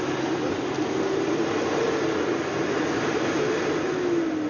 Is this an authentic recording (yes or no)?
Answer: yes